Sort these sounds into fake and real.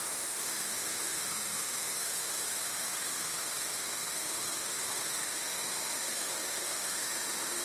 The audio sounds fake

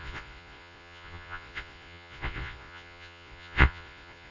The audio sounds fake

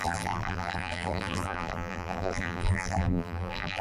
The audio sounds fake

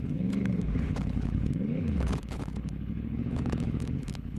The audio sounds fake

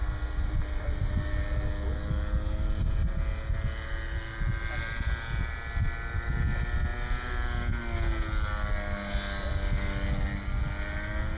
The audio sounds real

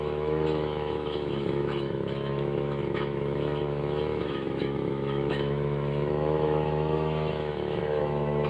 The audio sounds fake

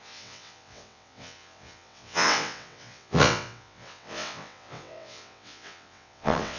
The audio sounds fake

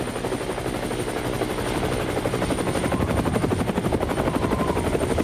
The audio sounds fake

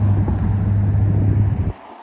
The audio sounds real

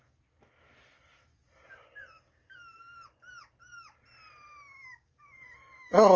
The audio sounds real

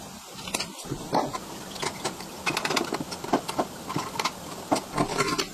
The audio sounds real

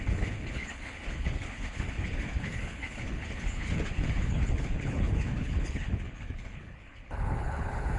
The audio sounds fake